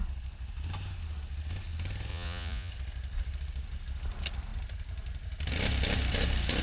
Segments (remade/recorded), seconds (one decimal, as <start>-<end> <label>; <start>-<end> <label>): 0.0-2.1 recorded; 2.1-2.7 remade; 2.7-6.6 recorded